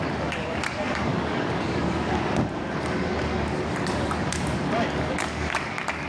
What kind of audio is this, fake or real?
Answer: fake